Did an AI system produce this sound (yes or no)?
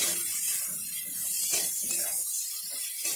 no